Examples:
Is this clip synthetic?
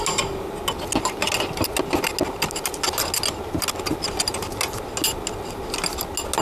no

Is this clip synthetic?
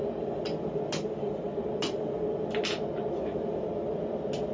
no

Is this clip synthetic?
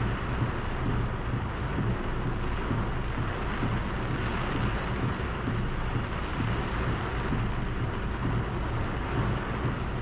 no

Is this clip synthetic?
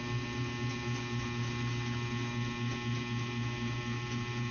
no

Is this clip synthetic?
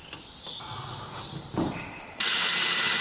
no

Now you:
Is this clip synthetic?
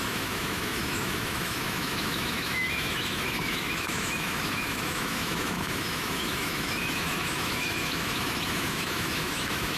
yes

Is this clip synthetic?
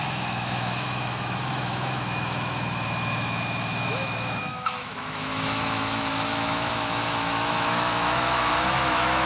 yes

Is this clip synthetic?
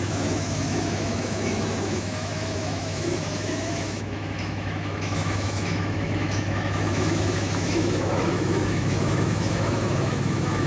yes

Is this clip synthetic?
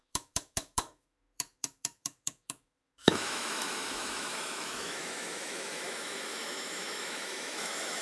yes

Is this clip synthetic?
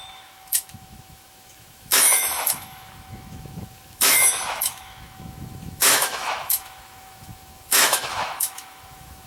yes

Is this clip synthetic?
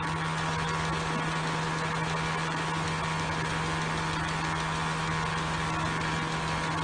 no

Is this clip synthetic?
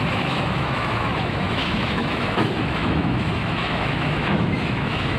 yes